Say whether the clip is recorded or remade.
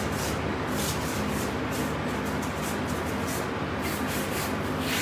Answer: recorded